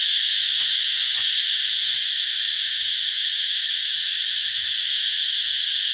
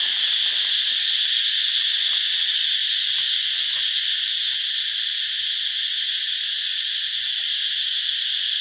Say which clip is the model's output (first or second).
first